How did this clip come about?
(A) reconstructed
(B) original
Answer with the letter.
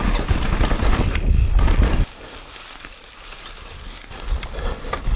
B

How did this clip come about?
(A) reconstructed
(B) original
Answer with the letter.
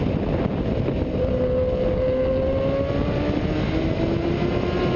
B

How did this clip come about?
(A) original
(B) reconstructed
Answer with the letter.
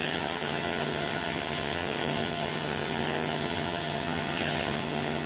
B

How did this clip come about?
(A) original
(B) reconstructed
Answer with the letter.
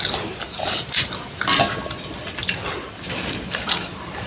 A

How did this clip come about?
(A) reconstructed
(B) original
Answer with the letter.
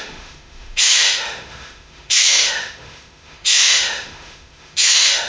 A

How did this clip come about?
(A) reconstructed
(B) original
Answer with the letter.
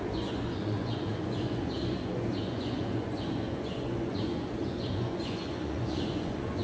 A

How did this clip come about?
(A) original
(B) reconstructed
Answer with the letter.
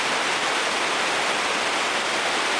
A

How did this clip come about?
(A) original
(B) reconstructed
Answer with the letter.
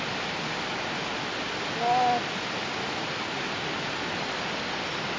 A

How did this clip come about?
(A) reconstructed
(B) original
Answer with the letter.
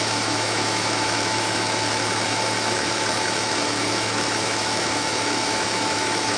A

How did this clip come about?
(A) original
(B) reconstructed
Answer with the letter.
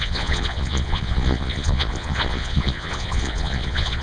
B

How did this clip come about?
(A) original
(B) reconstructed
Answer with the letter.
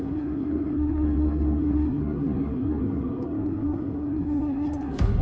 B